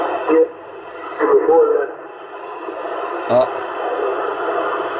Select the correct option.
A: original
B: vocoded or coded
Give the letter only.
A